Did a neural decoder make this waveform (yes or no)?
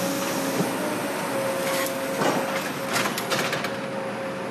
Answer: no